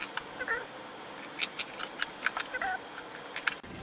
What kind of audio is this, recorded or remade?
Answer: recorded